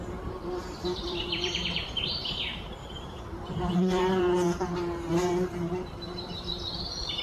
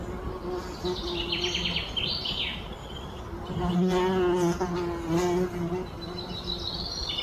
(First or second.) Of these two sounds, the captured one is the second